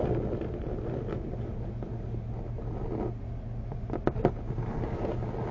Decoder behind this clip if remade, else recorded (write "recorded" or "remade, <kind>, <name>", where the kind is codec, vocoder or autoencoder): recorded